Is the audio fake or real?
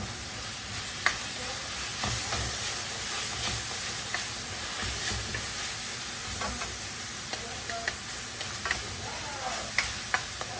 real